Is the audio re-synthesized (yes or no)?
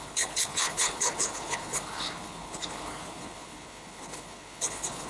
yes